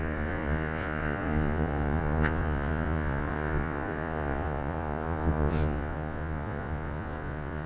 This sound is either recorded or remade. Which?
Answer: remade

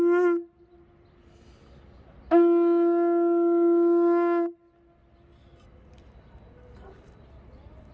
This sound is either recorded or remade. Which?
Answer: recorded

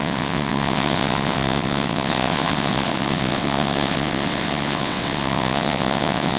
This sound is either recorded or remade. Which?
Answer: remade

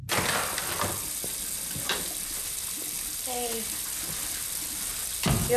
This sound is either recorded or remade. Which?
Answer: recorded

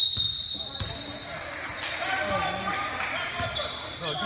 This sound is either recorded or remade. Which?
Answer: recorded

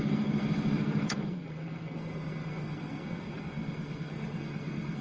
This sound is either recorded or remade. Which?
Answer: remade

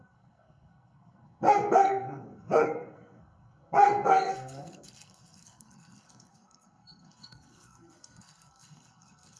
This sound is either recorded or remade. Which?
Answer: remade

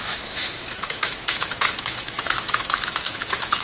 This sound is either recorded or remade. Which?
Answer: remade